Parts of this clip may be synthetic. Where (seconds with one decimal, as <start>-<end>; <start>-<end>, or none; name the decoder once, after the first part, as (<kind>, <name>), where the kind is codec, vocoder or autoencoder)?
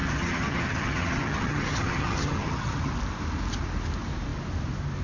0.0-2.9 (vocoder, HiFi-GAN)